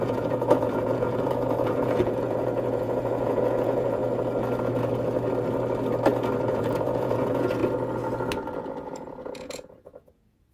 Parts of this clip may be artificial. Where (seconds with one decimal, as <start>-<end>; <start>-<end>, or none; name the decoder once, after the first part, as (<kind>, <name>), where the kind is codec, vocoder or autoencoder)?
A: 0.0-4.0 (vocoder, Vocos); 6.5-7.6; 8.8-10.5